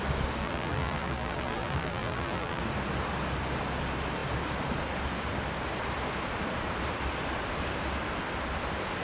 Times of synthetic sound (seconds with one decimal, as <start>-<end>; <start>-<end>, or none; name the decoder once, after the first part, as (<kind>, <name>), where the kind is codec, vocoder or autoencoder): 0.4-2.6 (vocoder, BigVGAN v2)